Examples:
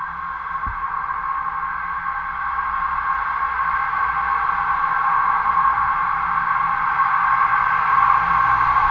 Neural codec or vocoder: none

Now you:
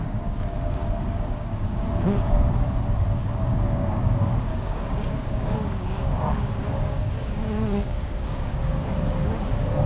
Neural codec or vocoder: codec, DAC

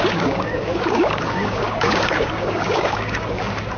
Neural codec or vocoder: codec, DAC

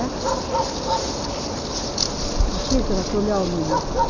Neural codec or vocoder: none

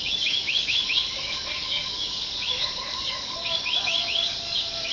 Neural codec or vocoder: codec, DAC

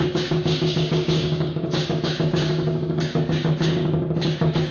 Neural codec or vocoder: codec, DAC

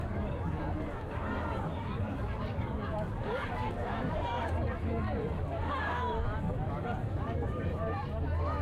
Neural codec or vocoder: codec, DAC